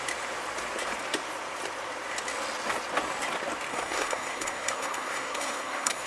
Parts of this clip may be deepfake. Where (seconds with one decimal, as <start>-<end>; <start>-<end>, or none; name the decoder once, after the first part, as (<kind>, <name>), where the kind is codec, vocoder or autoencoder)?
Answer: 3.7-6.1 (codec, SNAC)

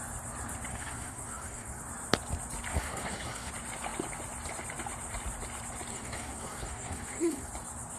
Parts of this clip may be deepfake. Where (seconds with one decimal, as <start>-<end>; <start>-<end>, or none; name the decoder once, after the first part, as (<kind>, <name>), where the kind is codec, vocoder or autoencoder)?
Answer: 0.7-1.8 (codec, SNAC); 2.7-3.5; 5.9-7.5

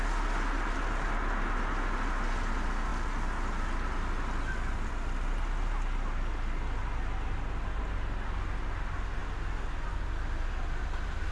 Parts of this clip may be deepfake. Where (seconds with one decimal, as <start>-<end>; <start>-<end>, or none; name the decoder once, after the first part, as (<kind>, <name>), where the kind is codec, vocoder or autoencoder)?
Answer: none

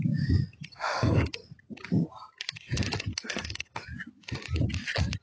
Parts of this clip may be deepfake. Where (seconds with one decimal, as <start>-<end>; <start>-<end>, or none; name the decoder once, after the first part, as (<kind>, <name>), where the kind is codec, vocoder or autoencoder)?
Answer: 0.7-1.2 (codec, SNAC); 3.1-3.8

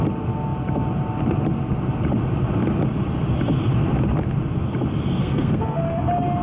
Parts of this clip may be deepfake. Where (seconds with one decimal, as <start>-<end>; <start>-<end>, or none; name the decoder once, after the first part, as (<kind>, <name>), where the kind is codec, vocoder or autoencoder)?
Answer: 5.2-5.8 (codec, SNAC)